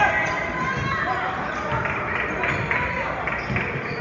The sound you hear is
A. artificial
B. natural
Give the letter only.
B